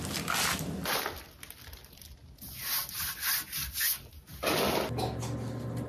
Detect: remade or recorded recorded